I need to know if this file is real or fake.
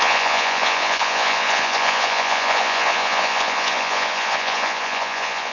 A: fake